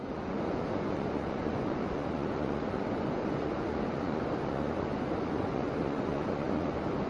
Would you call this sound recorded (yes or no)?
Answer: no